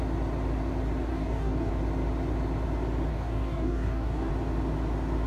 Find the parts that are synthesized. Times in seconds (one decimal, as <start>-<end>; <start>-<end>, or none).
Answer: 1.1-1.7; 3.1-4.3